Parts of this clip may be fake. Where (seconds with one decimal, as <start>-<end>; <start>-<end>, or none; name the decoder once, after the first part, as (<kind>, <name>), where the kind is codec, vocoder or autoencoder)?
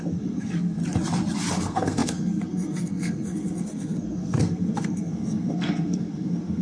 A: 0.0-0.8 (codec, SNAC); 1.5-6.6